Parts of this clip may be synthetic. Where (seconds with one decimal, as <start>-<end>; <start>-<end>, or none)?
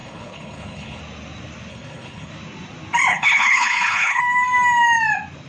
0.0-1.0; 1.7-2.3; 3.1-4.2